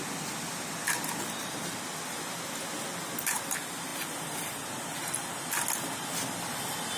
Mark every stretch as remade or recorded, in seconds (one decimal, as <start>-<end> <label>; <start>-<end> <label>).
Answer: 0.0-7.0 recorded